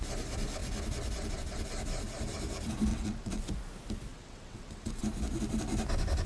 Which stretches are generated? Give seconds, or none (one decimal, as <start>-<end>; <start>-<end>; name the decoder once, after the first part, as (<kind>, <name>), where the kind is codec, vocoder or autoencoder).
2.9-3.4 (vocoder, WaveNeXt); 4.1-5.0